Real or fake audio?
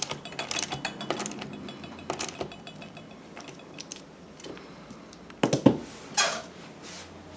real